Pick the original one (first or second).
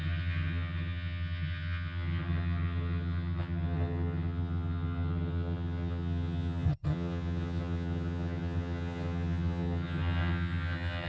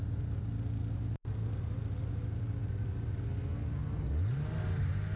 second